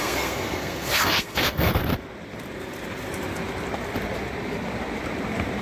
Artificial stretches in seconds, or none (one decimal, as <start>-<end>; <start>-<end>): 0.0-1.8